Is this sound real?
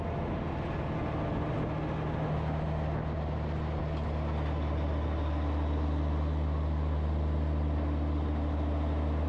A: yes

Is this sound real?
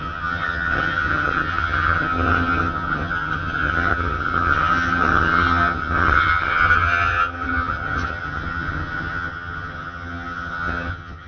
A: no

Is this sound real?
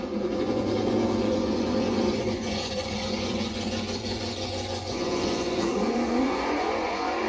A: no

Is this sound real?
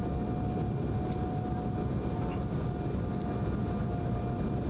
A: yes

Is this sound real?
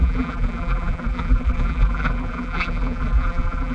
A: no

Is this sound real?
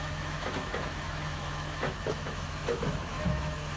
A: no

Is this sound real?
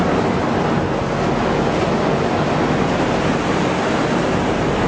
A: yes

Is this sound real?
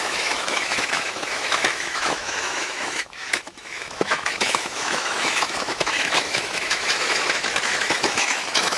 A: no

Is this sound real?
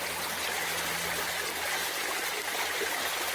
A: yes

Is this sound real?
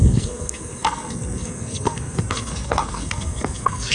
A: no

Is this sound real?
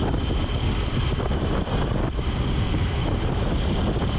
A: yes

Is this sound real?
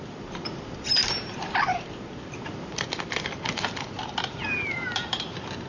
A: yes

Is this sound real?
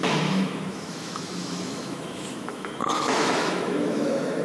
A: no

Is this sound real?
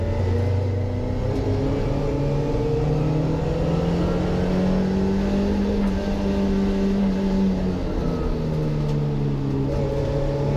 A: yes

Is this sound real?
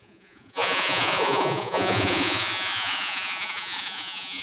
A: no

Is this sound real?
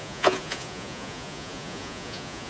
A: no